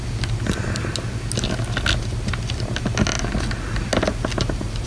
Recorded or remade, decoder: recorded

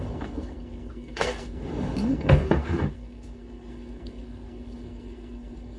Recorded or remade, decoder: remade, codec, SNAC